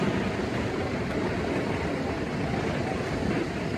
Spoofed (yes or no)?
no